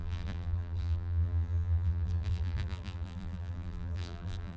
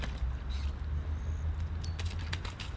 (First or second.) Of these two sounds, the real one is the second